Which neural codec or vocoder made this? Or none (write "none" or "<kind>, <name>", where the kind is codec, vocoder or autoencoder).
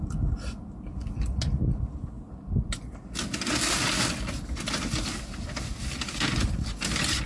none